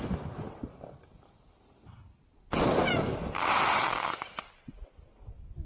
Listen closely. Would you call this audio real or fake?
real